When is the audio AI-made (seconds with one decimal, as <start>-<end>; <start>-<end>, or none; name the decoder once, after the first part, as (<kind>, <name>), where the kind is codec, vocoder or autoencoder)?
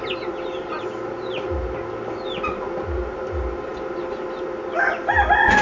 none